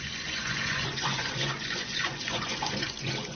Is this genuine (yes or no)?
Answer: no